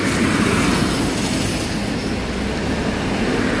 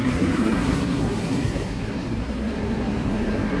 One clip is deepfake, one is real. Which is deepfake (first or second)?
second